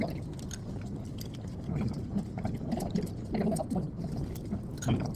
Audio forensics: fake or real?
real